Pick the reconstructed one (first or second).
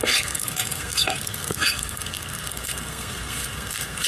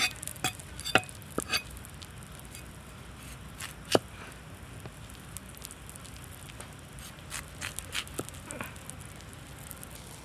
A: first